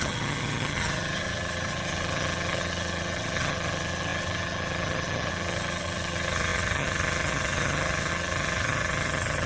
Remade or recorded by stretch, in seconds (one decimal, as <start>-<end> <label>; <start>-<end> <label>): 0.0-9.5 remade